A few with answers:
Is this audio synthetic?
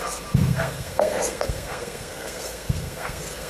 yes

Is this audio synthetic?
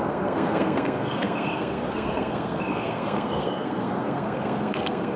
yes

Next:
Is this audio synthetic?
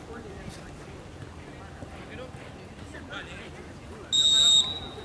no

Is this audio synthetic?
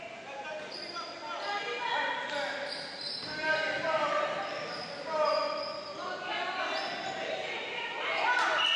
no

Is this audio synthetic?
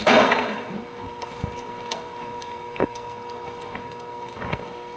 yes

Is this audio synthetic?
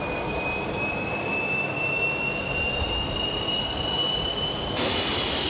no